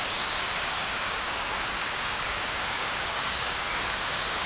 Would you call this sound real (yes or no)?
no